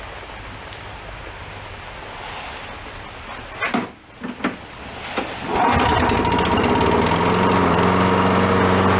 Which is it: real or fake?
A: real